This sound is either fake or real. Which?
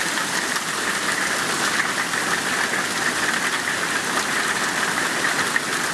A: real